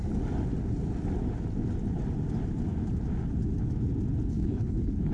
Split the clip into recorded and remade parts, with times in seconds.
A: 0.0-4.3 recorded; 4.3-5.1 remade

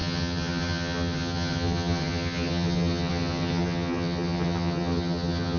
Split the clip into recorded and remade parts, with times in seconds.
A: 0.0-5.6 remade

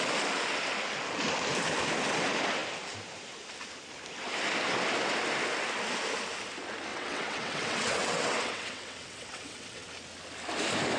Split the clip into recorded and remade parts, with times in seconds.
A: 0.0-6.9 recorded; 6.9-9.9 remade; 9.9-11.0 recorded

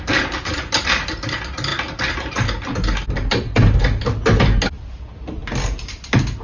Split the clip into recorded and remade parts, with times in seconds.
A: 0.0-6.4 recorded

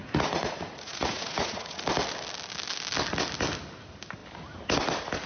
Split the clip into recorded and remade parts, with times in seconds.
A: 0.0-1.8 remade; 1.8-5.3 recorded

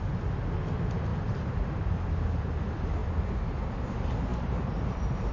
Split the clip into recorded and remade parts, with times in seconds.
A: 0.0-1.1 recorded; 1.1-2.6 remade; 2.6-3.0 recorded; 3.0-3.9 remade; 3.9-4.3 recorded; 4.3-5.3 remade